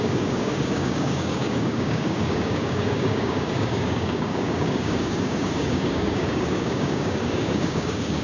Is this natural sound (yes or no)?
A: no